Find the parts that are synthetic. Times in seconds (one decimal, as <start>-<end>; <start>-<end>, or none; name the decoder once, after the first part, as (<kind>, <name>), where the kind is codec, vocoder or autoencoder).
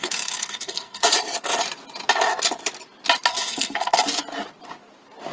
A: 0.0-1.1 (codec, SNAC); 3.3-4.0